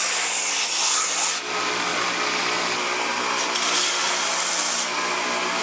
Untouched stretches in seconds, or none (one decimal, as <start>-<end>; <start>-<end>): 0.0-5.6